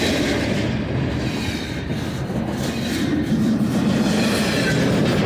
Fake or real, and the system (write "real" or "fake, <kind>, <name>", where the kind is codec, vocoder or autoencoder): real